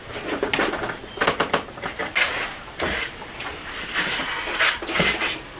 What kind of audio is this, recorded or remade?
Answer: recorded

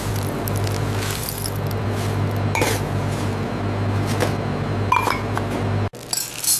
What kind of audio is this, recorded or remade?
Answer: recorded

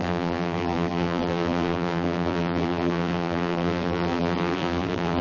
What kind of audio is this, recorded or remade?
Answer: remade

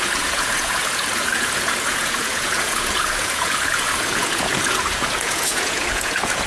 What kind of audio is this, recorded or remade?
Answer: remade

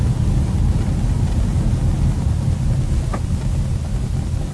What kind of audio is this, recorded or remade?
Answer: recorded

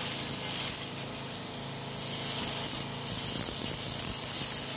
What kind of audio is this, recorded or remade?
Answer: recorded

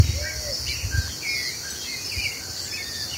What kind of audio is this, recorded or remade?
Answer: recorded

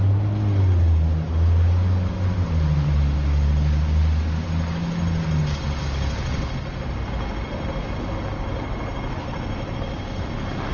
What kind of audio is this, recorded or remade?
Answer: recorded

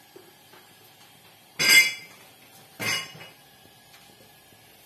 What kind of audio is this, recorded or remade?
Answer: recorded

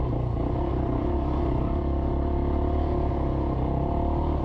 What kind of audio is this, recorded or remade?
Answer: recorded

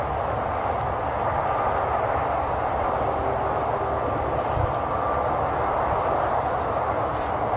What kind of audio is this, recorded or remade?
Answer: recorded